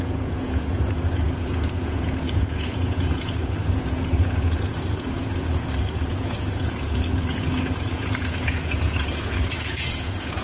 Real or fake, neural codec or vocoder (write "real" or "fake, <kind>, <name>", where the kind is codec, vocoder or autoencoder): fake, vocoder, Vocos